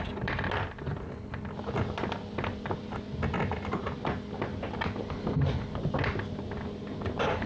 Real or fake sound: real